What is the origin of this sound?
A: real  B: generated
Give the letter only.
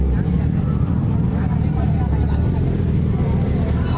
B